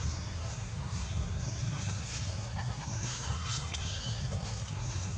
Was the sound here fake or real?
fake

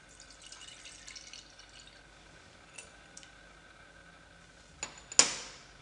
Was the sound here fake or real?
real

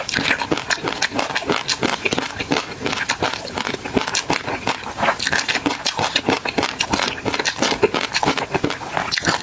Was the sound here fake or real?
real